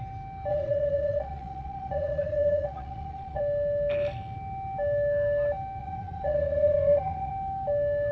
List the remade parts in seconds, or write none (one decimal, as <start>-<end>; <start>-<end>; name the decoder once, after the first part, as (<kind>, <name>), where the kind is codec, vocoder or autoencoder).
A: 0.5-3.4 (vocoder, Vocos); 5.8-7.3